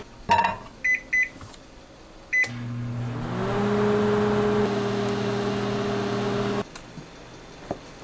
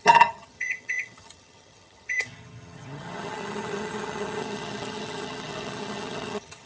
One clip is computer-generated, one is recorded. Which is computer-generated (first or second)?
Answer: second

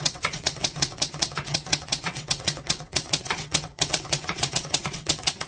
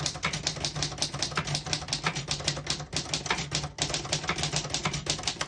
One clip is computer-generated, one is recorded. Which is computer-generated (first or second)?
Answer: first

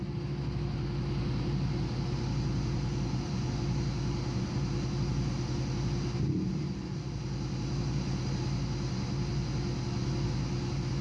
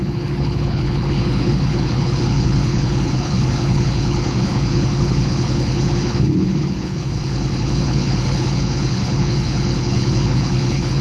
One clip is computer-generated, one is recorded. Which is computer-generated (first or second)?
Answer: second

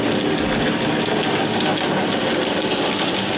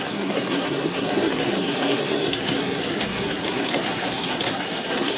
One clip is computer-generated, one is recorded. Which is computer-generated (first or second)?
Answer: second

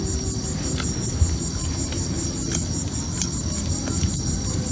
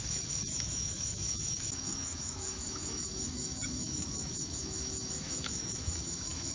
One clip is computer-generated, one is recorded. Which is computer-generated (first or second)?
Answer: second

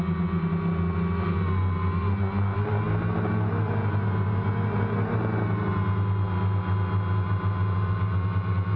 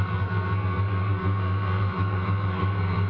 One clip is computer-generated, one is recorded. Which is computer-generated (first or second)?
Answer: second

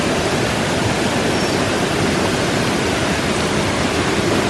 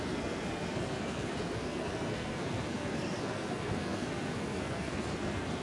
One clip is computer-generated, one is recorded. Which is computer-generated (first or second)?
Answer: second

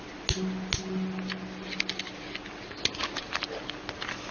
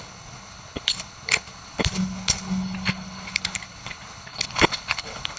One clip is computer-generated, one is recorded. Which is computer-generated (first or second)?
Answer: second